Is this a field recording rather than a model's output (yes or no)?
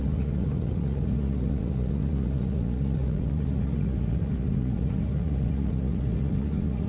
no